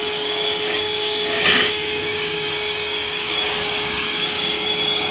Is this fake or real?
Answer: fake